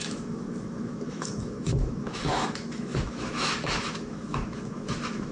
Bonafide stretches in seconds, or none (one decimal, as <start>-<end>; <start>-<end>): none